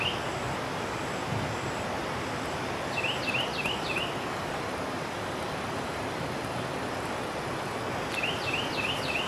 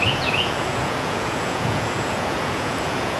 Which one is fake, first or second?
second